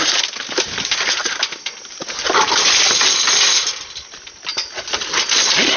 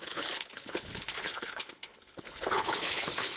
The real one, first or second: first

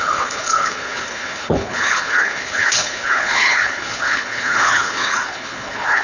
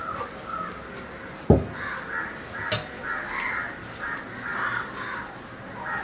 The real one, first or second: second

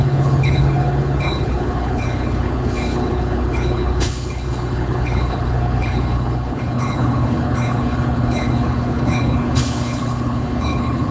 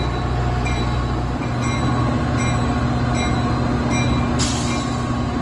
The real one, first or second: second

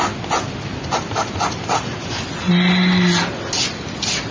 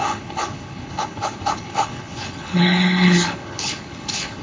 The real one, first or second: first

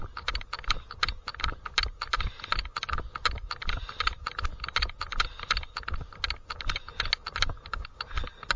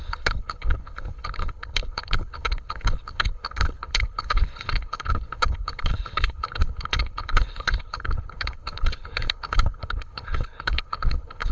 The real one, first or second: first